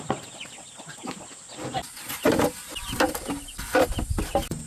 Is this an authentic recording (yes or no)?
yes